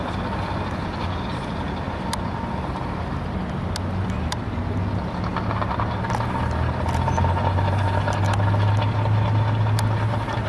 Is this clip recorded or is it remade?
recorded